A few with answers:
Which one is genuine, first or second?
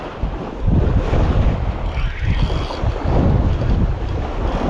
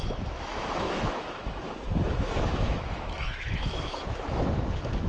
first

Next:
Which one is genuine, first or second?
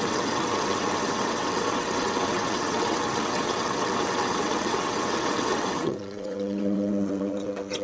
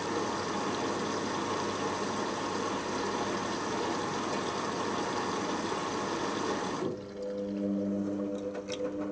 second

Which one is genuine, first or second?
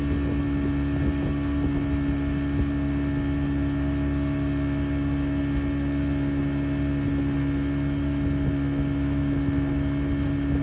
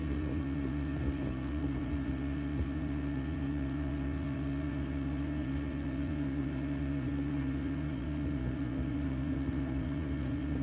first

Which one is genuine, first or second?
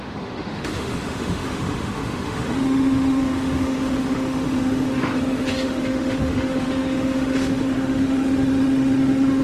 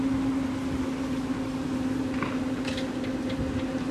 second